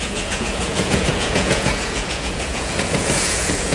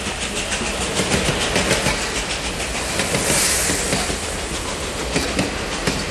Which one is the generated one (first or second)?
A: first